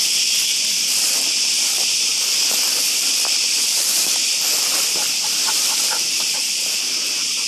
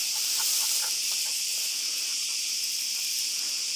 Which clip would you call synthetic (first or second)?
first